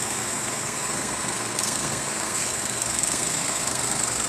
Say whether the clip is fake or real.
fake